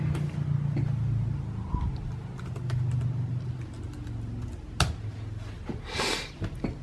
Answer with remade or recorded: recorded